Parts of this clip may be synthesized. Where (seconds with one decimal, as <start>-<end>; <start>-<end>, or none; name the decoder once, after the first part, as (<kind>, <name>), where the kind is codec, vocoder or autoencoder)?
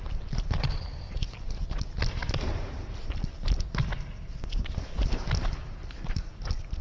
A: none